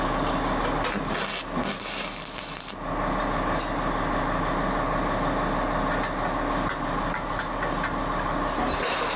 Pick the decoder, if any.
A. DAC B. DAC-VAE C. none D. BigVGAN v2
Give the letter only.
C